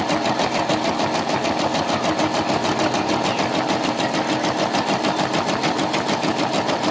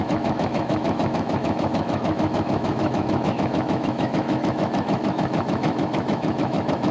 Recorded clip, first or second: first